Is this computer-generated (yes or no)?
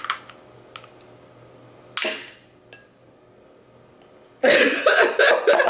no